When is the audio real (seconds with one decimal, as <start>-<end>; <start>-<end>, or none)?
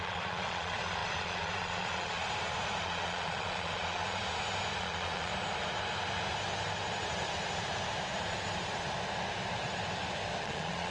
2.2-2.8; 4.2-4.8; 5.3-10.4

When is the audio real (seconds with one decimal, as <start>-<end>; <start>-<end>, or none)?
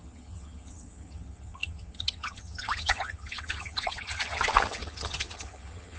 none